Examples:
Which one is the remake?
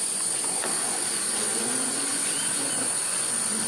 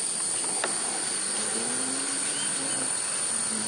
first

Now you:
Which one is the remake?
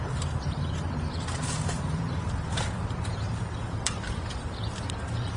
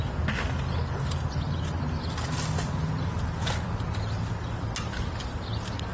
first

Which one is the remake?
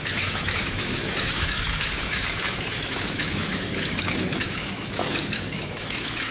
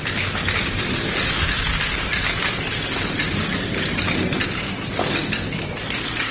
first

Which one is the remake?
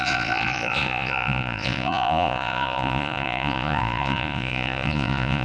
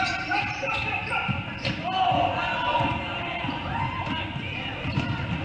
first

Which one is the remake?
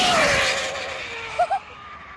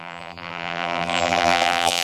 second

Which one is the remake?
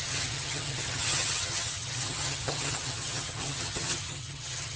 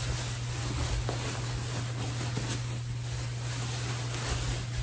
first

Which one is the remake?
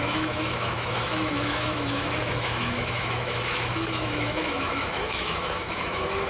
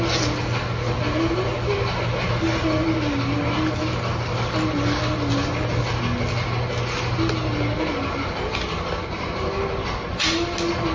first